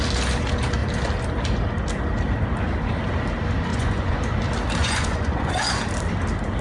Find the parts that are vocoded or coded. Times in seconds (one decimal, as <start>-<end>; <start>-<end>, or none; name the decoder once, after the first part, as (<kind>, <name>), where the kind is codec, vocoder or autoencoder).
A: 3.7-4.2 (vocoder, Vocos); 4.8-5.8